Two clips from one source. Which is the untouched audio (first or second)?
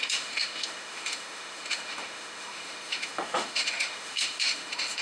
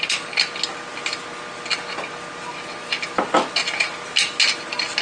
second